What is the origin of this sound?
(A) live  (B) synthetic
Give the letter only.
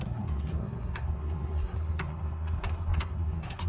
B